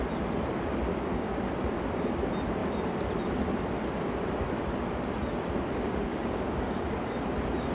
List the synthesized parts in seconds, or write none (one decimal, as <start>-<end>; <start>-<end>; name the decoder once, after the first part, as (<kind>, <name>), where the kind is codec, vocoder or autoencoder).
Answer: 0.9-1.4 (codec, DAC); 6.1-6.9